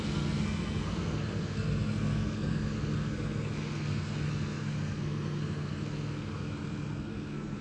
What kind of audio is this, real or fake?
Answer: fake